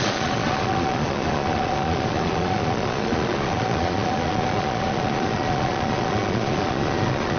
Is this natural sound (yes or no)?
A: no